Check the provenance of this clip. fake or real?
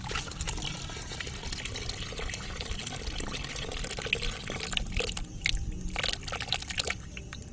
real